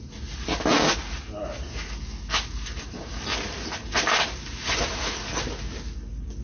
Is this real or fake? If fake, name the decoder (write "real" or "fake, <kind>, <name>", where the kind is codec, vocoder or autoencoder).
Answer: real